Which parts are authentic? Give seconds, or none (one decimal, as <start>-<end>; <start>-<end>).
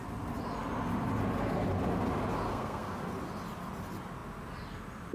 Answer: 0.0-2.5; 3.1-5.1